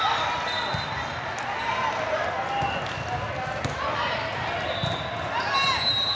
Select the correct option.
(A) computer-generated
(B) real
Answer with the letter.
B